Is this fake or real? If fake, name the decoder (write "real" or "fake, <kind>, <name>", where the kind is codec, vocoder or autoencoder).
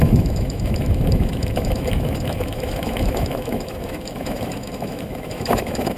fake, autoencoder, DAC-VAE